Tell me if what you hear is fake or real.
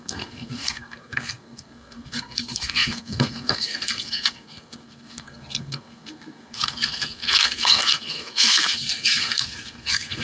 fake